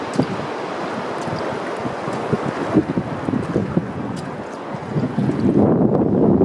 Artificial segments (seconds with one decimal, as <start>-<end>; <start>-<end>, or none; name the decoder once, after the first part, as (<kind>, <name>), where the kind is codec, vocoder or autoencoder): 1.8-2.4 (vocoder, Vocos); 3.6-5.4